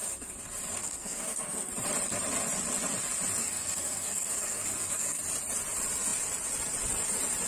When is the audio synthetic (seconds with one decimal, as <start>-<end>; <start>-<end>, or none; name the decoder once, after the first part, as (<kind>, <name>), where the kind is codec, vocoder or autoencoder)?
0.8-1.7 (codec, SNAC); 3.4-5.2